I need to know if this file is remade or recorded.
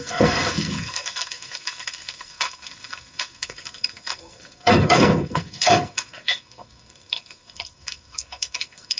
remade